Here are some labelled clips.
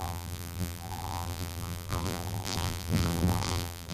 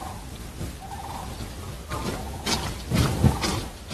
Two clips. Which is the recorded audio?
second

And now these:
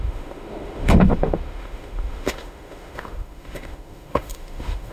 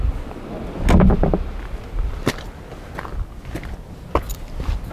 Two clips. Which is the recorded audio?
second